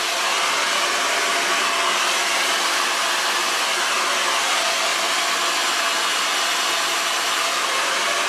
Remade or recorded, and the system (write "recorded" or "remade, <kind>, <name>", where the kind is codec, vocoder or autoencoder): recorded